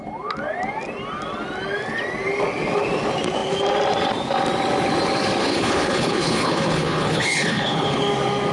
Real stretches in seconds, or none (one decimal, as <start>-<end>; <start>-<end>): 0.0-5.4; 8.0-8.5